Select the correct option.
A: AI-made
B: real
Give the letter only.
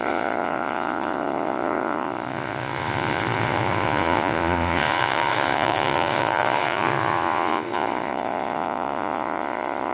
A